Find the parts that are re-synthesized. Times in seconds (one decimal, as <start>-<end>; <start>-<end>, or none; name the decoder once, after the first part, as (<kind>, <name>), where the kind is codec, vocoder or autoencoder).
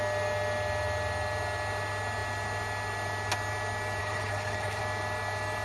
4.0-4.8 (codec, HILCodec)